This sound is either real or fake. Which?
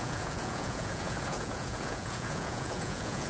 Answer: fake